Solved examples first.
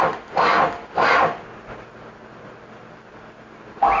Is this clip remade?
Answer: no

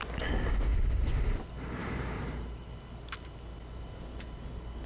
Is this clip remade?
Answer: no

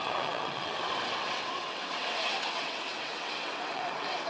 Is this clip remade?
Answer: yes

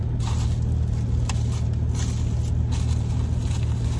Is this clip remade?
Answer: no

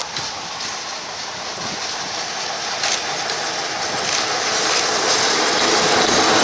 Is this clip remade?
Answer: no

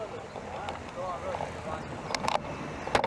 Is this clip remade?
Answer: no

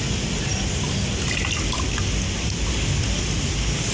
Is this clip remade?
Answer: no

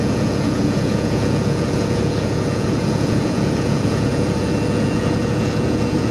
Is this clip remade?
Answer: yes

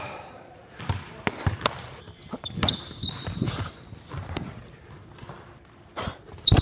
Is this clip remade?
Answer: yes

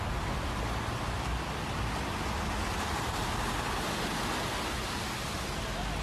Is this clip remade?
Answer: no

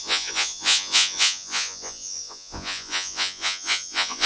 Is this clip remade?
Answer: yes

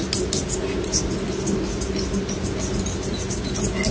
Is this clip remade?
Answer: no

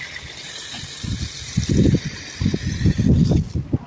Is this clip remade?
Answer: no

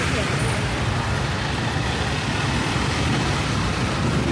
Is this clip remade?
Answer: no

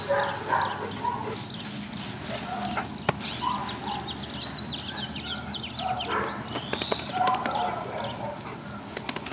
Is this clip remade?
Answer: no